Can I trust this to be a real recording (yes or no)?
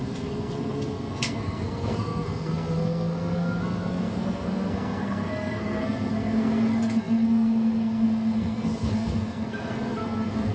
no